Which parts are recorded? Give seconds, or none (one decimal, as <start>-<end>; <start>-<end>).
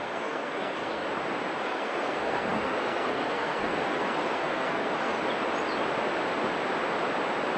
1.0-1.6; 5.1-7.6